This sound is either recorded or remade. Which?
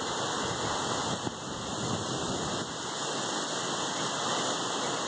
recorded